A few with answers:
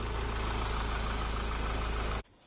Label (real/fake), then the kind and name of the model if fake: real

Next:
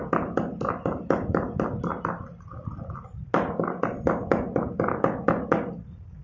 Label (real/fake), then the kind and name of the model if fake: real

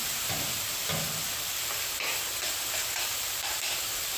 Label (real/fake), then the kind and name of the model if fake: real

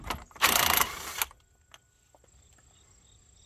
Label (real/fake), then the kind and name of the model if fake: real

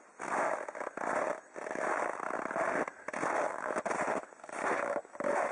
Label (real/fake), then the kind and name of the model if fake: real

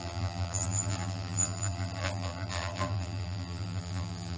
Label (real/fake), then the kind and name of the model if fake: fake, vocoder, BigVGAN v2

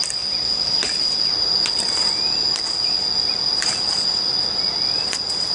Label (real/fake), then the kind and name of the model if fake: real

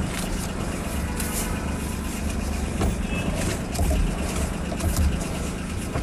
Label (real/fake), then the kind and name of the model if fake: real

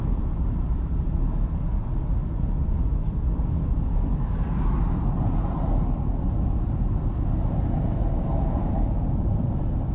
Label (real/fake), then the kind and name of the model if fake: real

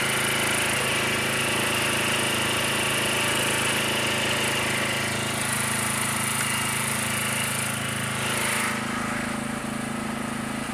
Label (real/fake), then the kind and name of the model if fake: real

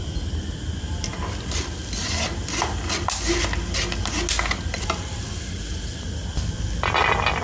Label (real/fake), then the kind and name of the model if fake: real